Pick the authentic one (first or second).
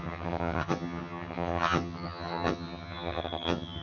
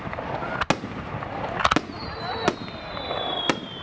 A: second